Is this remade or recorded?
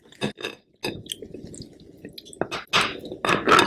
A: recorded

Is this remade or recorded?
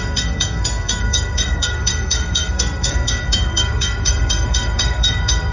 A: remade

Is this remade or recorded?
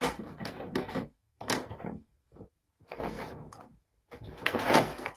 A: remade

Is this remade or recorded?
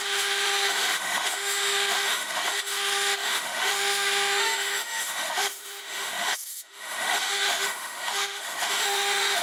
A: remade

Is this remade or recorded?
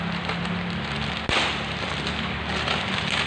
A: recorded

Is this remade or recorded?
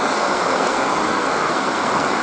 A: remade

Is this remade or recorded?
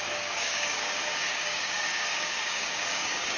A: remade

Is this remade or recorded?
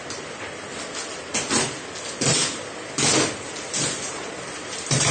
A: recorded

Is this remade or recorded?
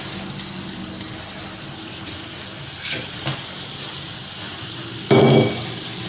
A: recorded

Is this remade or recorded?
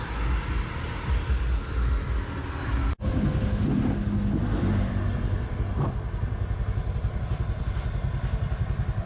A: recorded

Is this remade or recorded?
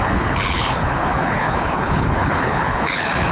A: remade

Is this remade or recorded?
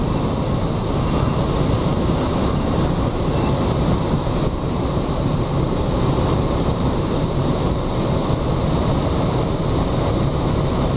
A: remade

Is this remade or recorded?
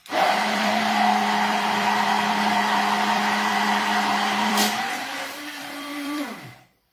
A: remade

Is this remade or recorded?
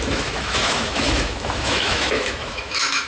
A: remade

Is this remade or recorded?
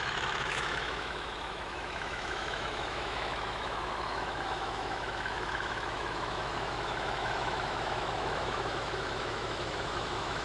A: remade